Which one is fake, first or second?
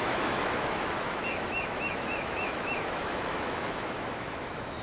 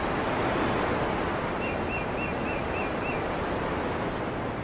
first